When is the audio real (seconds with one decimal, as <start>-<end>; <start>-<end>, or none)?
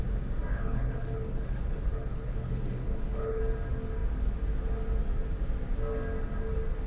0.0-0.5; 3.4-6.9